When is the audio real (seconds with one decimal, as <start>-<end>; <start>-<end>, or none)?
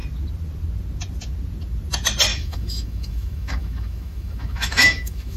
0.0-2.3